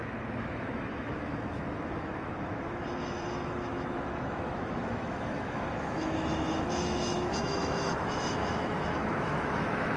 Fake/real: fake